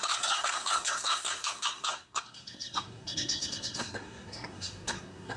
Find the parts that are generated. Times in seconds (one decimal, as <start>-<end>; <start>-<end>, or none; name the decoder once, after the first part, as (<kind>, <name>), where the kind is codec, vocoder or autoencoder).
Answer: 0.0-5.4 (codec, SNAC)